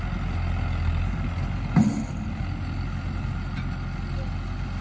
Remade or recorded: recorded